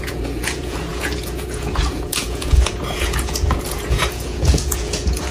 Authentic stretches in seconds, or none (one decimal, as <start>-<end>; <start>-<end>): none